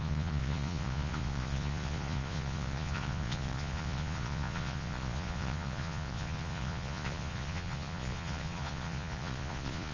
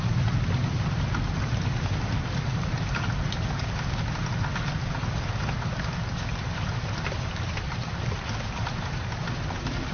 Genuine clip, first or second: second